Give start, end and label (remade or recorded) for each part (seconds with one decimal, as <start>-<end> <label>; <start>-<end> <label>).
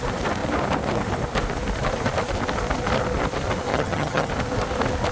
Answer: 0.0-3.7 recorded; 3.7-4.3 remade; 4.3-5.1 recorded